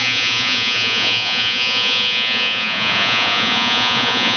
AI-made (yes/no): yes